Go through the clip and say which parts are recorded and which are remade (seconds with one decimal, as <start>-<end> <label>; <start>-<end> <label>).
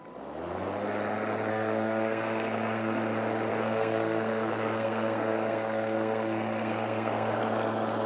0.0-1.5 recorded; 1.5-3.0 remade; 3.0-3.5 recorded; 3.5-7.4 remade; 7.4-8.1 recorded